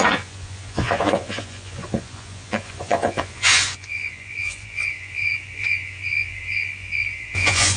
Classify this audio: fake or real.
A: fake